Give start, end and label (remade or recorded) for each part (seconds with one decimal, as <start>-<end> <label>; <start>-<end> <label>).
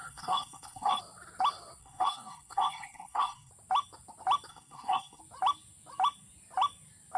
0.0-1.0 remade; 1.0-1.8 recorded; 1.8-3.5 remade; 3.5-4.5 recorded; 4.5-5.2 remade; 5.2-7.2 recorded